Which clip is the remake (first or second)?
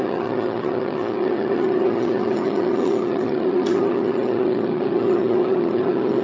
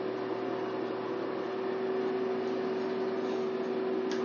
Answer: first